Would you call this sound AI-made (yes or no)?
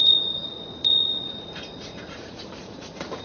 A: yes